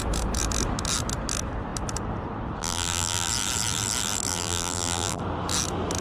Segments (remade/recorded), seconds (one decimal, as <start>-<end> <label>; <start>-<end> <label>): 0.0-2.6 recorded; 2.6-3.3 remade; 3.3-4.3 recorded; 4.3-5.2 remade; 5.2-6.0 recorded